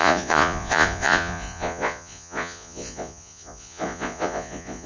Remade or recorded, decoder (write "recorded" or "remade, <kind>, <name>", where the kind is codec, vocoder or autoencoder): remade, vocoder, Vocos